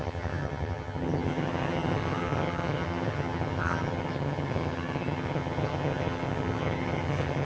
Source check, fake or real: fake